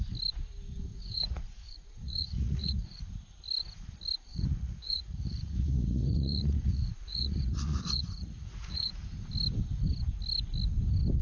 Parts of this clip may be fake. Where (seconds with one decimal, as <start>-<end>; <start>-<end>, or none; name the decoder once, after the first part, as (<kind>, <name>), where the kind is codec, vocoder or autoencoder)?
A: 0.9-3.0 (vocoder, Vocos); 4.3-9.0